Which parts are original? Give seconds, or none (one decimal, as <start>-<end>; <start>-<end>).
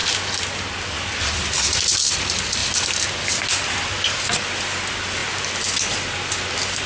0.0-6.9